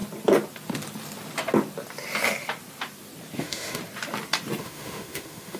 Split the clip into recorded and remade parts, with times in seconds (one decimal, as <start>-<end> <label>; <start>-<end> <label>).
0.0-3.4 recorded; 3.4-3.8 remade; 3.8-4.6 recorded; 4.6-5.6 remade